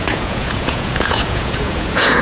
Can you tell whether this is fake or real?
fake